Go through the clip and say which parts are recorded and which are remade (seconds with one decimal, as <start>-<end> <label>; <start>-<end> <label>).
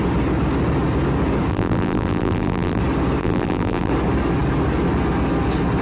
0.0-1.5 recorded; 1.5-2.8 remade; 2.8-3.2 recorded; 3.2-3.9 remade; 3.9-5.8 recorded